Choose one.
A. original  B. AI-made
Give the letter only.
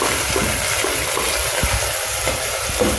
A